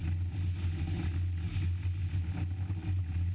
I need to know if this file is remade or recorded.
recorded